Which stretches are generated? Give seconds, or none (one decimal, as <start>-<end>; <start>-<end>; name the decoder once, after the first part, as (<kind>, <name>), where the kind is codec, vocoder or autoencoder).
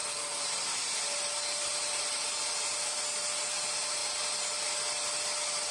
none